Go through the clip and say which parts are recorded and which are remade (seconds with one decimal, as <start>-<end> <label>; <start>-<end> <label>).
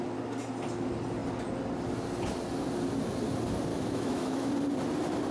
0.0-3.7 recorded; 3.7-4.5 remade; 4.5-5.3 recorded